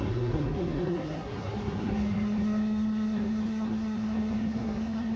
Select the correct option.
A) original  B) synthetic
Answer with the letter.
B